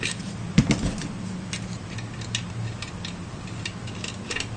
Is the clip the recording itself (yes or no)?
yes